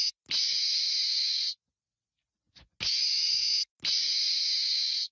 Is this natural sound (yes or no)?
yes